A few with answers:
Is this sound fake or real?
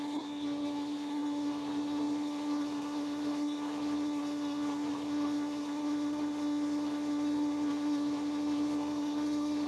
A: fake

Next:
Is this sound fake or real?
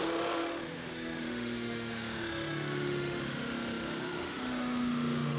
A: fake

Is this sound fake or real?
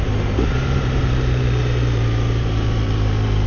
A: fake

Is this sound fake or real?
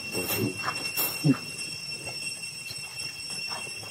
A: real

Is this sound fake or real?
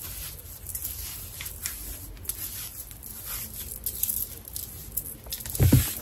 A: real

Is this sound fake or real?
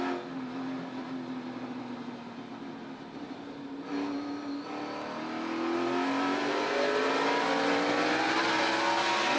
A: real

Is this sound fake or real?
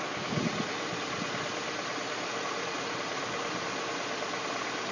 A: real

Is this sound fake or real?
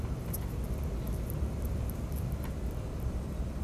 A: real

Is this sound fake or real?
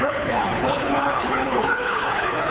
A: fake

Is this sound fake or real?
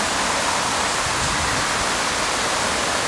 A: real